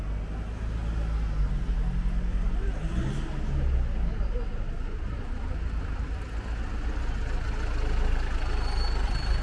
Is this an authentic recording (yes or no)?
yes